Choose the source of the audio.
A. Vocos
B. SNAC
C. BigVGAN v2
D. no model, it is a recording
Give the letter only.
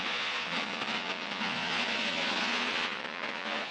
A